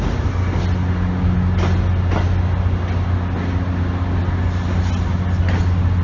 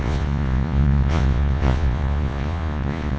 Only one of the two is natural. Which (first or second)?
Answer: first